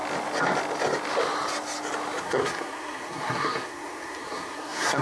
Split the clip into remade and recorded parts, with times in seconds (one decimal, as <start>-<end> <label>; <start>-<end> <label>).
0.0-2.2 recorded; 2.2-5.0 remade